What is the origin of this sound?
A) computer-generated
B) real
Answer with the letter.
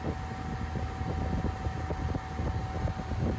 B